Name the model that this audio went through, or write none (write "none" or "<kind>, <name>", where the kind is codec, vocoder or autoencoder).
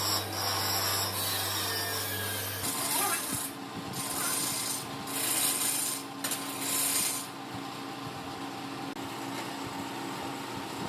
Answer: none